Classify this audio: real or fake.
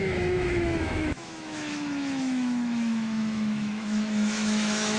fake